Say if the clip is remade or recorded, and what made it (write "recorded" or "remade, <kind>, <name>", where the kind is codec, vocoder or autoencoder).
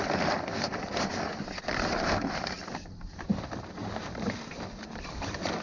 recorded